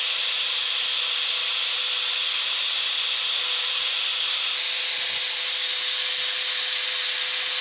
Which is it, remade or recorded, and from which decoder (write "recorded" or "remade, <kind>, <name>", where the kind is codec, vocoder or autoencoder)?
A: recorded